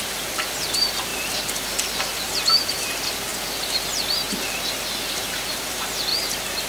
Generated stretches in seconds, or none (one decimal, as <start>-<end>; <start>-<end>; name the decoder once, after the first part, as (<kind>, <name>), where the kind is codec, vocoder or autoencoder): none